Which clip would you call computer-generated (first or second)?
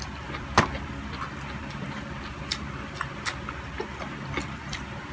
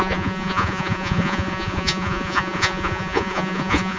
second